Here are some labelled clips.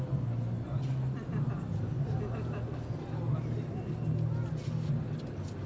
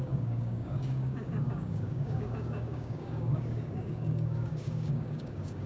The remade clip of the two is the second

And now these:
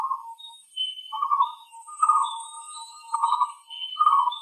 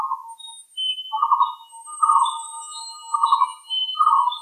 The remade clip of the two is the first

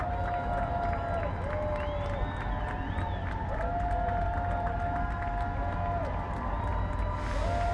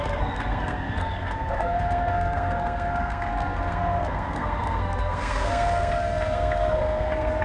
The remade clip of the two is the second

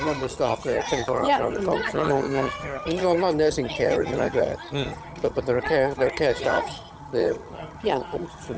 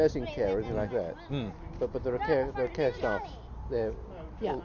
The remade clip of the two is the first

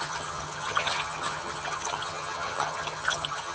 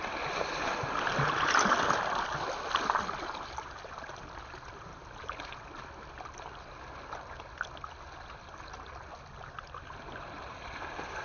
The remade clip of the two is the first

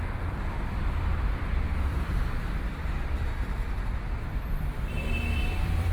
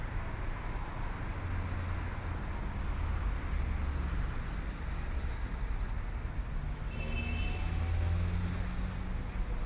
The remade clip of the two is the first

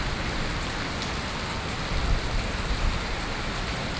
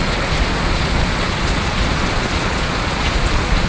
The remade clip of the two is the second